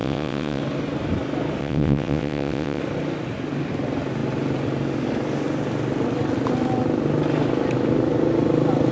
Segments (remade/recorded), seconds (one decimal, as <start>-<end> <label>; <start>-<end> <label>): 0.0-0.6 remade; 0.6-1.6 recorded; 1.6-2.8 remade; 2.8-8.9 recorded